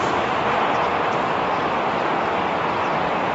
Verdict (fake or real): real